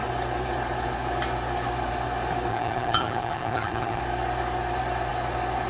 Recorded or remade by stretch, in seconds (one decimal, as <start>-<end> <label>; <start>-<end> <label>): 0.0-2.5 recorded; 2.5-4.0 remade; 4.0-5.7 recorded